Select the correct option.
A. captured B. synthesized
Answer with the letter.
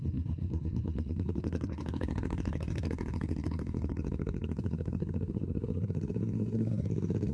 B